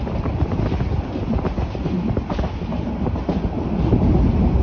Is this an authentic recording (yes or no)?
yes